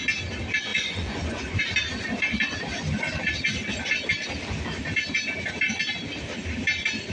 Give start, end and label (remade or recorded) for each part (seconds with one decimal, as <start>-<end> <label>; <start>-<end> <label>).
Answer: 0.0-0.7 recorded; 0.7-1.6 remade; 1.6-7.1 recorded